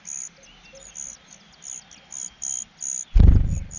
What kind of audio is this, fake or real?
real